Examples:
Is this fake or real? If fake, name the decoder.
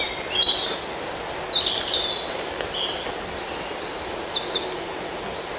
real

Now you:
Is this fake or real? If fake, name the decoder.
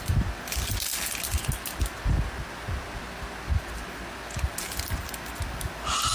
real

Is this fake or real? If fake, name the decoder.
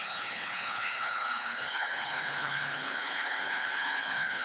fake, codec, HILCodec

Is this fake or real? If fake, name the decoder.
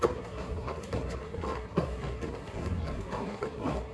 fake, codec, SNAC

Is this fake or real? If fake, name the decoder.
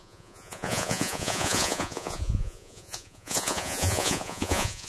fake, vocoder, Vocos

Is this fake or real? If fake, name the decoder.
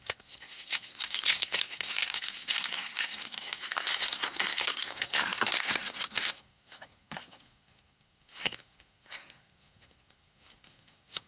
fake, codec, SNAC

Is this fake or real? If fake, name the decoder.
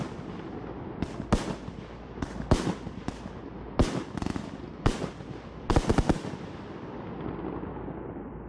real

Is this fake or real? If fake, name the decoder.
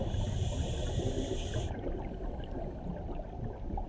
real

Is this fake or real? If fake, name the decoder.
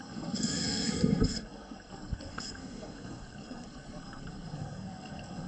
fake, codec, SNAC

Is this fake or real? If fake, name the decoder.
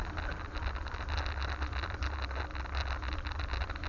real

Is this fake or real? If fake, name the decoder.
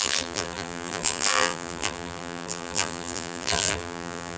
fake, vocoder, BigVGAN v2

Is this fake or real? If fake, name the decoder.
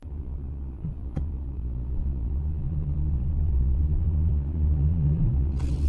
fake, vocoder, Vocos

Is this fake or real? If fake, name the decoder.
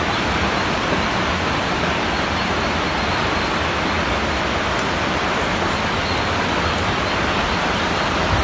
real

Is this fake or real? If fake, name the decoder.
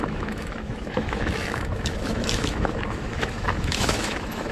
fake, autoencoder, DAC-VAE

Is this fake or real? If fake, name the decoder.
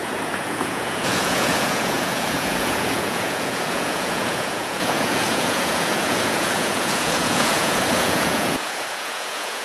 fake, vocoder, Vocos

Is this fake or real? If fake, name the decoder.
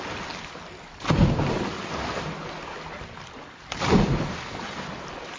real